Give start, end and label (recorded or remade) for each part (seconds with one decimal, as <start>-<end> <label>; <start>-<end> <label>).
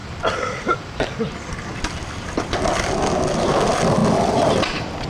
0.0-3.1 remade; 3.1-4.0 recorded; 4.0-5.1 remade